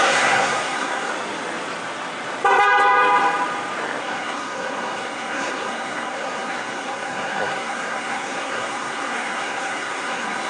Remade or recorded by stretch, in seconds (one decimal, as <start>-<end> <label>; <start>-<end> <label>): 0.0-1.1 remade; 1.1-4.0 recorded; 4.0-10.5 remade